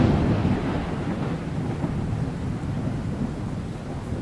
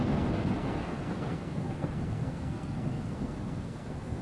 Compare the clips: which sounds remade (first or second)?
second